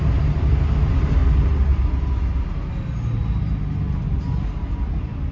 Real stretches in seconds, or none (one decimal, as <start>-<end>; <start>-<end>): 0.0-5.3